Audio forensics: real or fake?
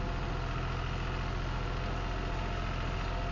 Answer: real